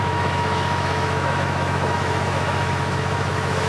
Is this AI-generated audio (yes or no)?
yes